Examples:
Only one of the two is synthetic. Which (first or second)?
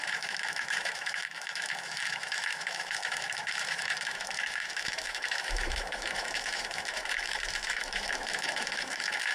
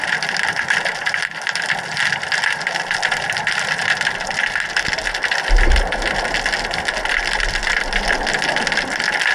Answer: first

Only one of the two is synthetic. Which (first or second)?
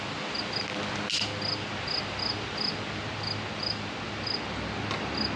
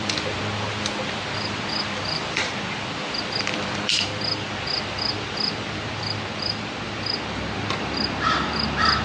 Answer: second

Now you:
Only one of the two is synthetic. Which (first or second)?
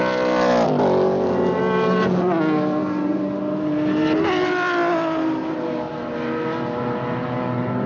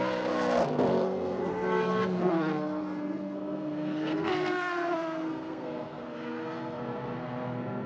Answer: second